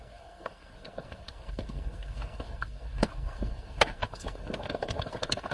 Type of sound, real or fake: fake